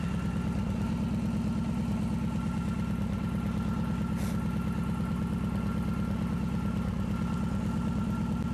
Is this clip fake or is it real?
real